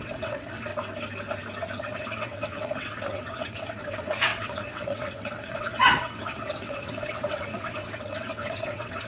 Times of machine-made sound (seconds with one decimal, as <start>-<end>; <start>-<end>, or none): 0.0-0.7; 1.8-9.1